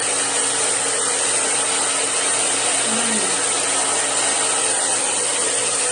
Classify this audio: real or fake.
real